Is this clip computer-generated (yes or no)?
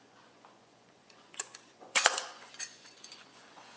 yes